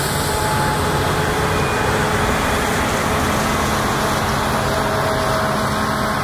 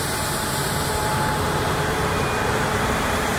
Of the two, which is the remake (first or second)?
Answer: second